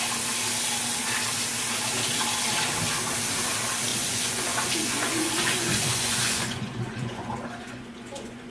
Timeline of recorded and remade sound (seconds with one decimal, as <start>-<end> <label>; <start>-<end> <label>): 0.0-3.9 recorded; 3.9-8.5 remade